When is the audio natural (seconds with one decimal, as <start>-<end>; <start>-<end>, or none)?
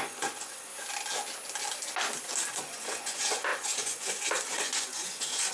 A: 0.7-2.5